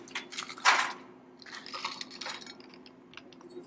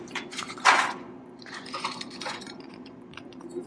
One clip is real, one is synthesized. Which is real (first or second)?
first